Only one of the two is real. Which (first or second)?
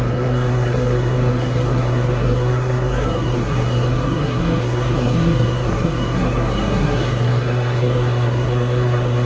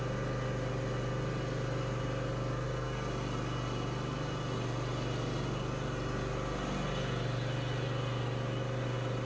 second